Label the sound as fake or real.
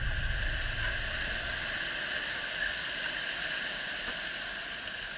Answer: real